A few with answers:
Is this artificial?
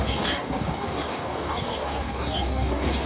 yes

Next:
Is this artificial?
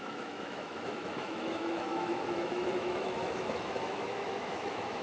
yes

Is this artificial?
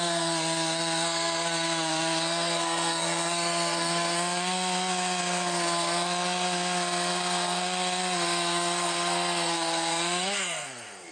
yes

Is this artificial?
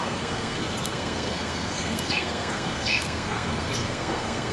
yes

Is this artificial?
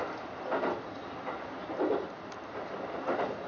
no